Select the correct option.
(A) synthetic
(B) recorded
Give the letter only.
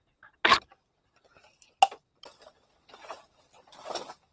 B